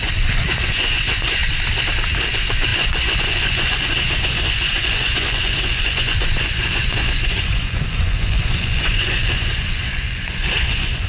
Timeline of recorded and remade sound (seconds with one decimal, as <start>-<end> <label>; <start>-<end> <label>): 0.0-1.4 remade; 1.4-2.3 recorded; 2.3-11.1 remade